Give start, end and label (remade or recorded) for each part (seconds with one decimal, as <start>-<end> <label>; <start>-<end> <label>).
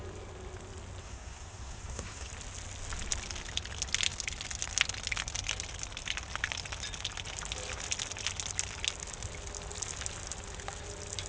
0.0-1.0 recorded; 1.0-2.3 remade; 2.3-11.3 recorded